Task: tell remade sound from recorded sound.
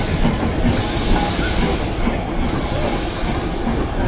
recorded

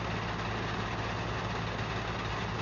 recorded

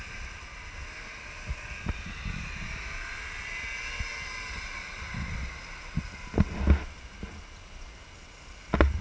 recorded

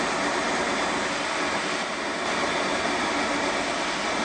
recorded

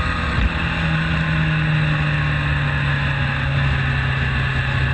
recorded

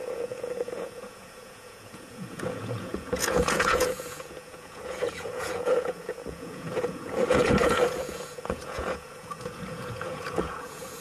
remade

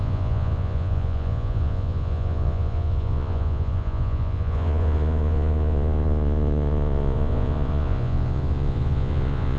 remade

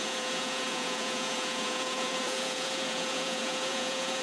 remade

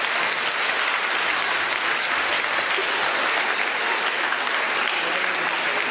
recorded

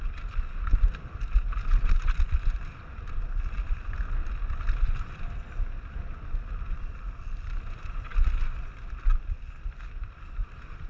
recorded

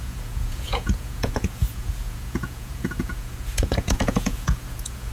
remade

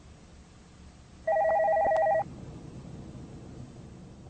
recorded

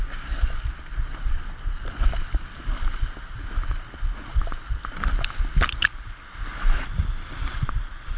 recorded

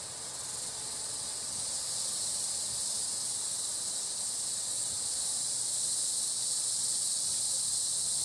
recorded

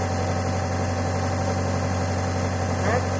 recorded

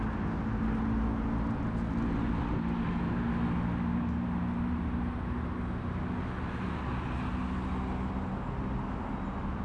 recorded